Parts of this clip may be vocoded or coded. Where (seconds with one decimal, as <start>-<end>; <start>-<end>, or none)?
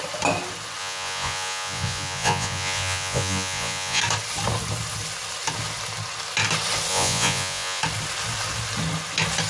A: 0.8-4.0; 6.9-7.8